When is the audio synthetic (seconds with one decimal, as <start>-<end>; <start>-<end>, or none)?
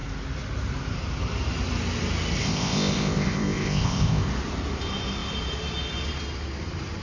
2.4-4.3